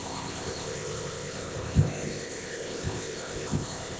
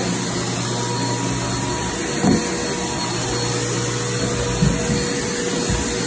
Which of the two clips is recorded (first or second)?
second